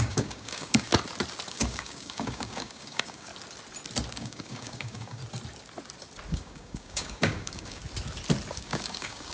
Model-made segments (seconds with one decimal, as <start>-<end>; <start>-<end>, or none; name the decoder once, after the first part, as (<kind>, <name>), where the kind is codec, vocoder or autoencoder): 0.0-0.9 (codec, DAC); 1.5-3.3; 4.1-5.2; 6.3-7.8; 8.5-9.3